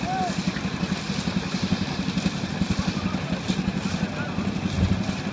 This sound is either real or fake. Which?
real